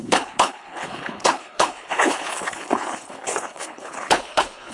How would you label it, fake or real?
fake